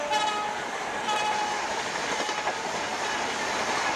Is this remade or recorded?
recorded